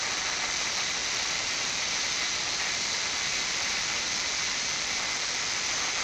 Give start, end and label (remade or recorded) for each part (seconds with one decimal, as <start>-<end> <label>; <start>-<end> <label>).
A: 0.0-6.0 remade